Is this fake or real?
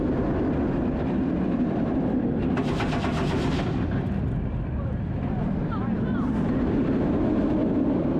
real